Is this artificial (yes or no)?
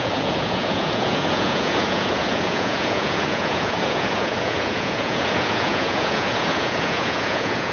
yes